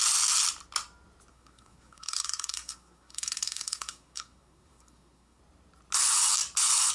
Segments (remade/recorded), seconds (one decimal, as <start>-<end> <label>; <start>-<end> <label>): 0.0-1.3 recorded; 1.3-5.4 remade; 5.4-6.9 recorded